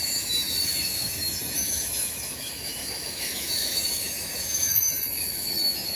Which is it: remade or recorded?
remade